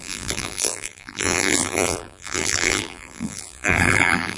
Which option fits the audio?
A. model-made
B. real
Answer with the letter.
A